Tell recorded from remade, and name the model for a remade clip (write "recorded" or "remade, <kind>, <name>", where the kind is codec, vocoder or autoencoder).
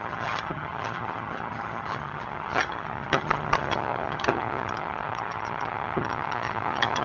remade, vocoder, HiFi-GAN